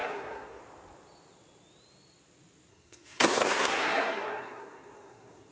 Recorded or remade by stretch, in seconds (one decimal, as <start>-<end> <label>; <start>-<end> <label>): 0.0-0.6 remade; 0.6-2.7 recorded; 2.7-5.5 remade